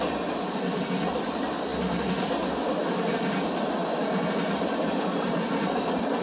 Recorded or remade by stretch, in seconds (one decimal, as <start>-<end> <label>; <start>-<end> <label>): 0.0-6.2 recorded